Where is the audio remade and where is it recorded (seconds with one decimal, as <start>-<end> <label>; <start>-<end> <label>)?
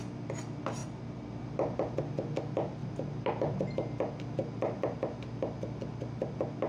0.0-2.8 recorded; 2.8-3.3 remade; 3.3-4.4 recorded; 4.4-5.0 remade; 5.0-6.7 recorded